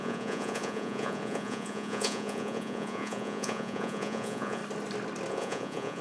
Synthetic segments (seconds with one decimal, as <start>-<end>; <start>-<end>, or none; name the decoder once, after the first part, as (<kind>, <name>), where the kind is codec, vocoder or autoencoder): 0.0-4.6 (vocoder, Vocos); 5.3-6.0